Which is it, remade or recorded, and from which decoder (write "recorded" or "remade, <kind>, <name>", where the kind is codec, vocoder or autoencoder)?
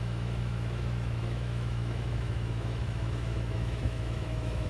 remade, autoencoder, DAC-VAE